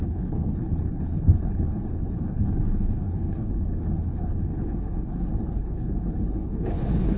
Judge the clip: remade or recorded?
remade